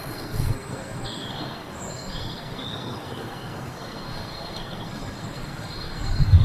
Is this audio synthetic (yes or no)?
yes